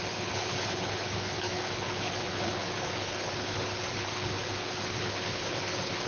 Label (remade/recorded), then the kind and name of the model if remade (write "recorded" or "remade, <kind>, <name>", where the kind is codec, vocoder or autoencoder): remade, codec, HILCodec